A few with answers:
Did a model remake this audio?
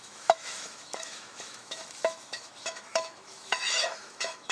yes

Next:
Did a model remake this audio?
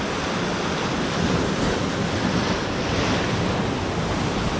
no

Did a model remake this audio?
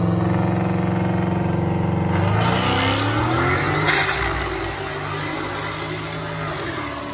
no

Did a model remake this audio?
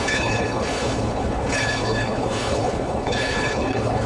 yes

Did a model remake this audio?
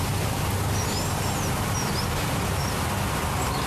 no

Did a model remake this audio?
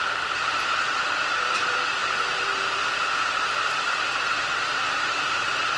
yes